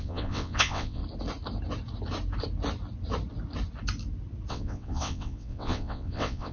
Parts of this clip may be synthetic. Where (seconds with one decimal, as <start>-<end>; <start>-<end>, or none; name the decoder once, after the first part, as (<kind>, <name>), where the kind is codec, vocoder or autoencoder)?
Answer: 0.0-1.0 (vocoder, WaveNeXt); 4.5-6.5